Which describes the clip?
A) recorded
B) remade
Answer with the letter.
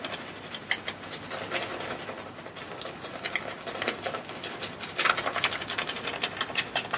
A